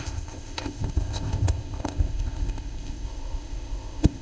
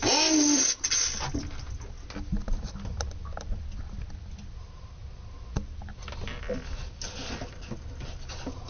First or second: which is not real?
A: first